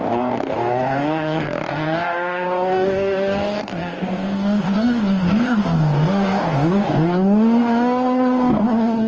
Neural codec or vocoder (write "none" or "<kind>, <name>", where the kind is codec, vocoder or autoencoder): codec, DAC